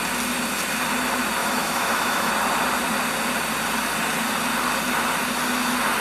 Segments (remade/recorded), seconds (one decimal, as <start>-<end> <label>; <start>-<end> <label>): 0.0-1.4 recorded; 1.4-2.3 remade; 2.3-6.0 recorded